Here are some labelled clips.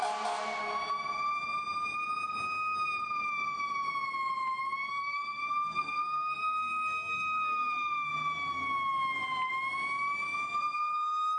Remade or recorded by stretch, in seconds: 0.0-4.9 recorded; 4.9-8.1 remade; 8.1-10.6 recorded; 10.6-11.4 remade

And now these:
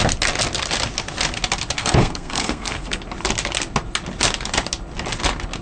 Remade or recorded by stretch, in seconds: 0.0-1.8 recorded; 1.8-3.0 remade; 3.0-5.6 recorded